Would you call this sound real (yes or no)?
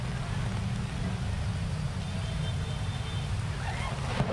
yes